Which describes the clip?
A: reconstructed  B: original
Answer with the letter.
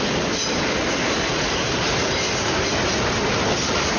B